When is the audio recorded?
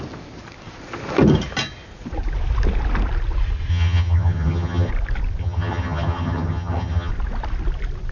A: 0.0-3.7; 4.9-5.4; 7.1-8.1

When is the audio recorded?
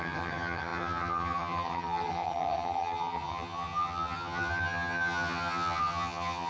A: none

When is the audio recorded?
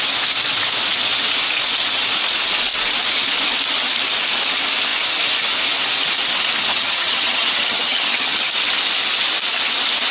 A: 0.0-6.7; 8.5-10.1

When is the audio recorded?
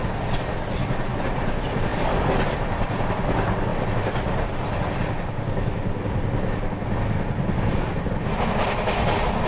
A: 0.0-9.5